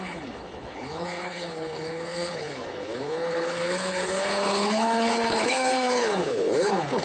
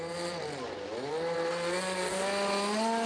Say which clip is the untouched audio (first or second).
second